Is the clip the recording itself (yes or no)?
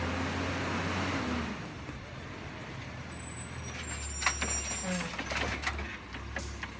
yes